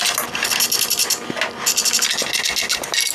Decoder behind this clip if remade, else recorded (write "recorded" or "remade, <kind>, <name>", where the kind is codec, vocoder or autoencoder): recorded